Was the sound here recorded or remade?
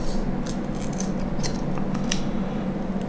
recorded